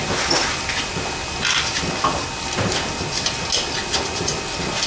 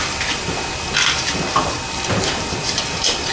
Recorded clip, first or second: first